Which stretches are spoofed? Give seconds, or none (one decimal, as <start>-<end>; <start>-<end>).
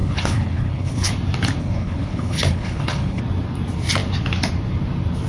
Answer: 0.0-1.1; 1.6-3.2